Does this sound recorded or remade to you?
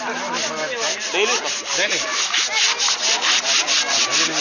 recorded